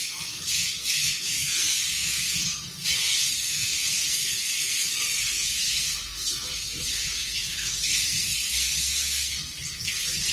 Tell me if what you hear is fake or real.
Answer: fake